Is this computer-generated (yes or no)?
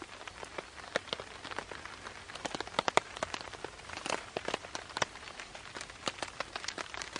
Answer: no